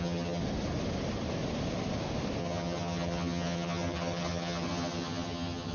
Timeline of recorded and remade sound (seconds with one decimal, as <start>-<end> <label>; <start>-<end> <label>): 0.0-0.4 remade; 0.4-2.4 recorded; 2.4-5.7 remade